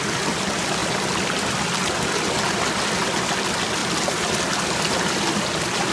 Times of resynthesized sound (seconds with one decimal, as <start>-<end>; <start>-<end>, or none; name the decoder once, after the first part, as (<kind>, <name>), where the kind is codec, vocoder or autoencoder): none